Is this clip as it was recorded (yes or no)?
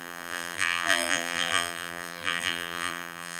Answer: no